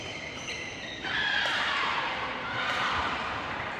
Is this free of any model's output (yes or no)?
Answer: no